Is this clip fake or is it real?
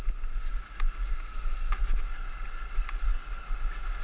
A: real